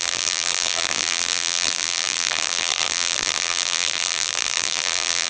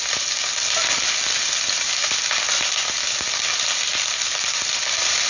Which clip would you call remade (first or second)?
first